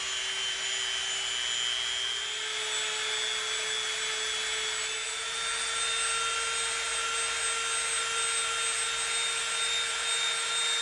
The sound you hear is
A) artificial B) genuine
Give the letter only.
B